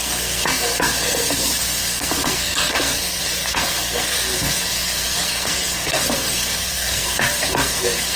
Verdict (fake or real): fake